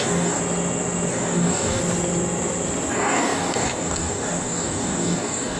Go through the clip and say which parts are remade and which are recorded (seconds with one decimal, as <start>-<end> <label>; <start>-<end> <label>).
0.0-0.4 remade; 0.4-1.1 recorded; 1.1-1.8 remade; 1.8-2.9 recorded; 2.9-5.6 remade